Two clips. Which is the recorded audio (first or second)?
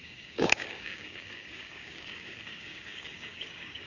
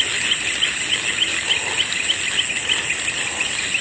second